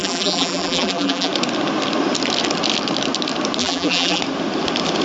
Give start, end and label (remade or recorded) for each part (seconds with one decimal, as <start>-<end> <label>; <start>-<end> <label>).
0.0-1.3 remade; 1.3-3.6 recorded; 3.6-4.2 remade; 4.2-5.0 recorded